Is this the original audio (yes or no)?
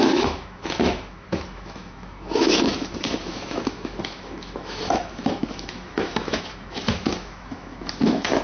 no